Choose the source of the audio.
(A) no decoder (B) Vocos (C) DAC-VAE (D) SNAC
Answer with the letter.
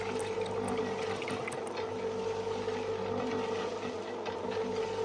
A